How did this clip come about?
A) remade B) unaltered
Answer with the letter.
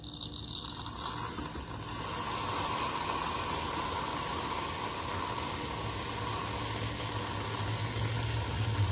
B